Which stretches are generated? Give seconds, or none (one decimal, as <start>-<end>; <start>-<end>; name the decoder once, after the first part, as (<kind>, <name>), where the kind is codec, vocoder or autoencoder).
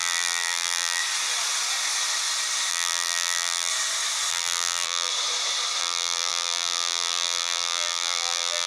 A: 0.0-1.0 (vocoder, BigVGAN v2); 2.7-3.7; 4.3-5.1; 5.8-8.7